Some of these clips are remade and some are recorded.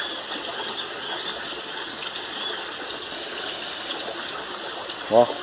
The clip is recorded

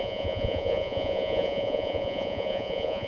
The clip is remade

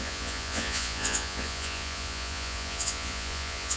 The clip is remade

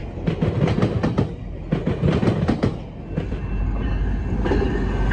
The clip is recorded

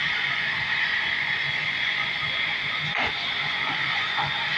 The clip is remade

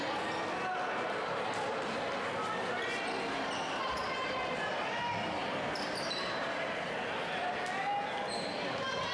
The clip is recorded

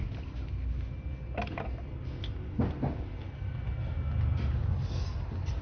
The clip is recorded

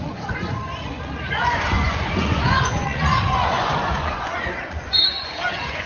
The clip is remade